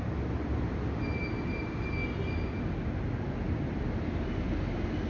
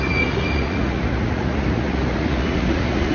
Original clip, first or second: first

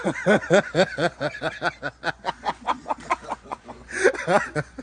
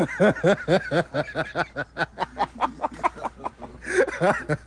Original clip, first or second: second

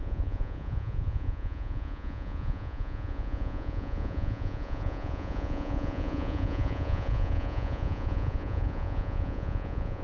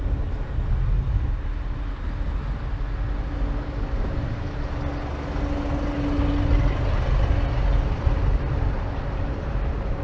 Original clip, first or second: second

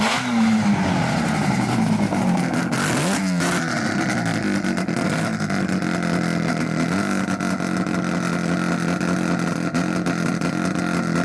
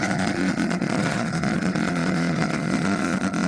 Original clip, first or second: first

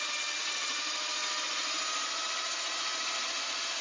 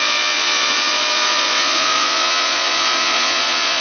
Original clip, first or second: first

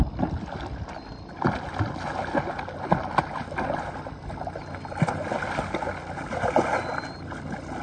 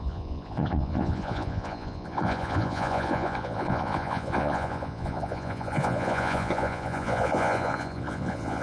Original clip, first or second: first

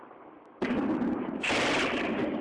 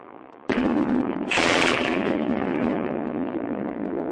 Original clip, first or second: first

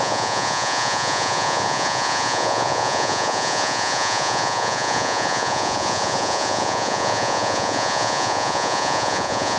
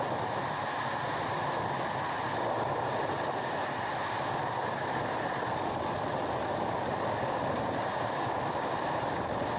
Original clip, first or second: second